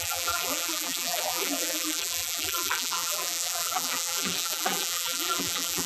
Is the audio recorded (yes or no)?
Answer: no